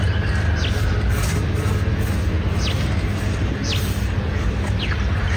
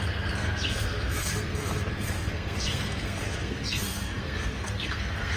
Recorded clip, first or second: first